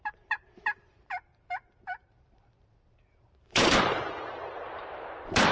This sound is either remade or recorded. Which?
remade